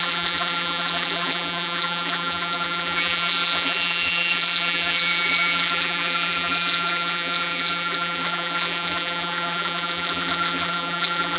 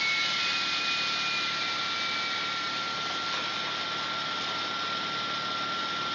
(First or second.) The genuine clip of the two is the second